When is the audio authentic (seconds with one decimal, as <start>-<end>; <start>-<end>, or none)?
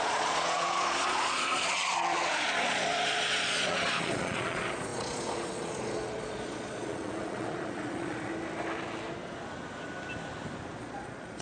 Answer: 8.3-10.8